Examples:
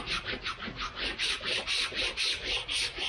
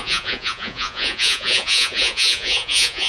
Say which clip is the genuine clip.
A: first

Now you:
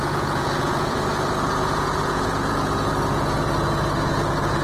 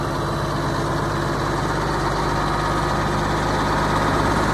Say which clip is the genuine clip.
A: second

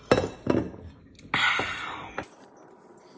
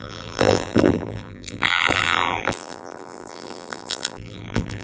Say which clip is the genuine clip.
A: first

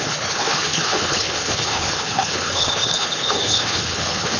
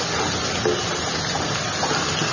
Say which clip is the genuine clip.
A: second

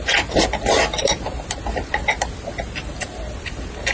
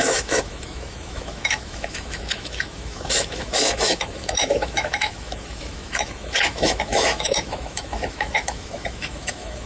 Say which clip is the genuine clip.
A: first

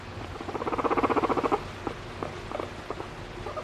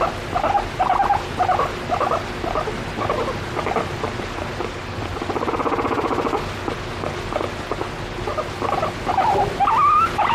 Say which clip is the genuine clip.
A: second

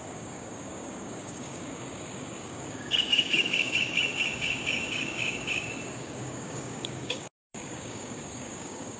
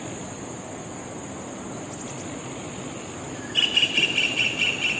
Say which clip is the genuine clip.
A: second